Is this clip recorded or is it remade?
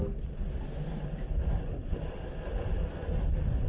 recorded